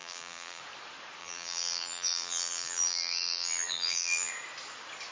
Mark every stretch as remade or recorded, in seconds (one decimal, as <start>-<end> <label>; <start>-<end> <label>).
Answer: 0.0-0.6 remade; 0.6-1.2 recorded; 1.2-4.3 remade; 4.3-5.1 recorded